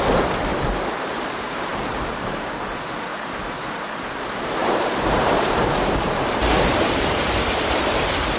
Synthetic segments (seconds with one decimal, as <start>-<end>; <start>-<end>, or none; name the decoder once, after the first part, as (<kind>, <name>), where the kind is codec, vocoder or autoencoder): 0.5-2.0 (vocoder, BigVGAN v2); 4.6-8.0